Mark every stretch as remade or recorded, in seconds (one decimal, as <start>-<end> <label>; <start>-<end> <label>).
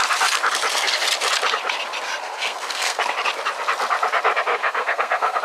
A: 0.0-2.2 recorded; 2.2-3.0 remade; 3.0-4.6 recorded; 4.6-5.4 remade